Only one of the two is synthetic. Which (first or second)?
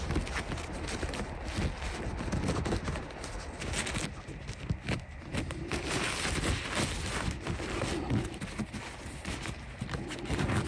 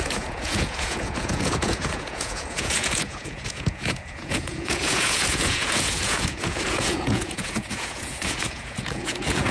second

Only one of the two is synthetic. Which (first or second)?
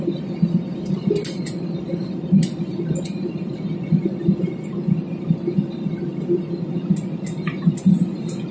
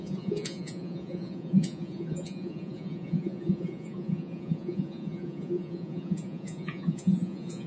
second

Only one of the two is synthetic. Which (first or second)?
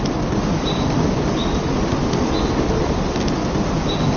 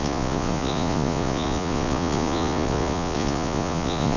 second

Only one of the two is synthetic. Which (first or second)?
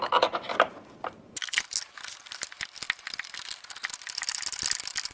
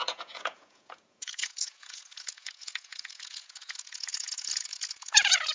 second